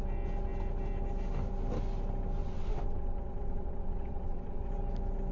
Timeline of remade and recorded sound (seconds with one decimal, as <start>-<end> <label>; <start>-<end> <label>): 0.0-2.4 recorded; 2.4-4.7 remade; 4.7-5.3 recorded